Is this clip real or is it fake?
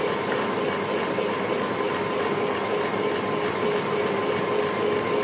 real